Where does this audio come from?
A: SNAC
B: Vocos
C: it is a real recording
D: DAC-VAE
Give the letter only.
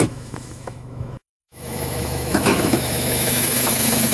D